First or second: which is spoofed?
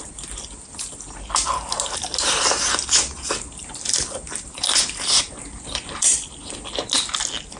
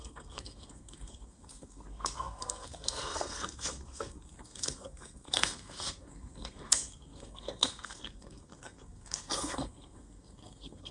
second